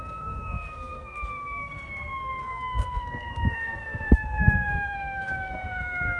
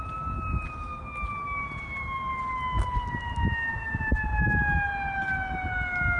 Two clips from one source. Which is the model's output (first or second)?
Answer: first